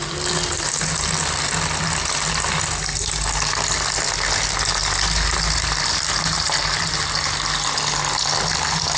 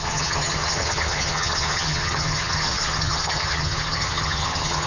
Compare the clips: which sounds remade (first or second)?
second